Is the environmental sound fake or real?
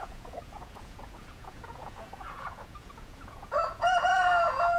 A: fake